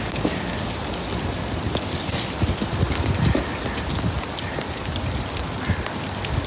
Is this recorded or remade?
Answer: recorded